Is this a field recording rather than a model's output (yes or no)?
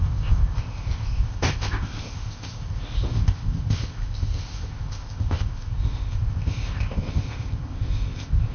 no